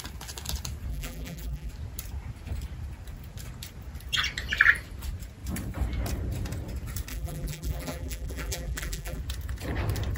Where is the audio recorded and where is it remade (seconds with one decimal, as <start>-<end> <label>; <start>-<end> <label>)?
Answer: 0.0-0.9 recorded; 0.9-1.7 remade; 1.7-7.1 recorded; 7.1-9.2 remade; 9.2-10.2 recorded